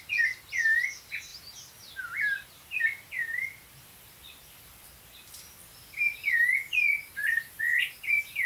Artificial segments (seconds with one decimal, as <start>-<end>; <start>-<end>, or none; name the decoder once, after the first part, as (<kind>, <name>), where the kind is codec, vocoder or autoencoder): 1.3-6.4 (vocoder, BigVGAN v2)